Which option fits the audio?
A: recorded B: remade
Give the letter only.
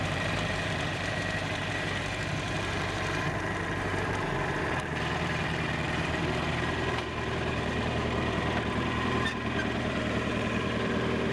B